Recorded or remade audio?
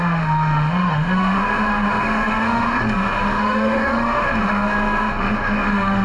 remade